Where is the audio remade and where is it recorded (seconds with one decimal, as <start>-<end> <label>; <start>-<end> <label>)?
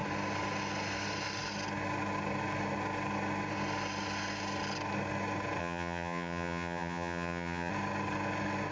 0.0-5.6 recorded; 5.6-7.7 remade; 7.7-8.7 recorded